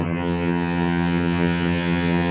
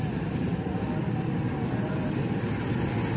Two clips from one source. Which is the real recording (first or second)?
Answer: second